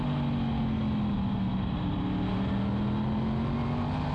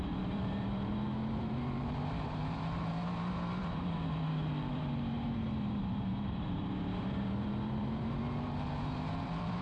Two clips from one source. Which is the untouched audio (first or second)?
first